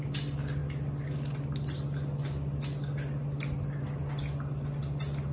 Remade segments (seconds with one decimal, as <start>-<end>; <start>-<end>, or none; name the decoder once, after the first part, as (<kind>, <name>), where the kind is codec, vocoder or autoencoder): none